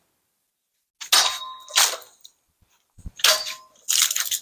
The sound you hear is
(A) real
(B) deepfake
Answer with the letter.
A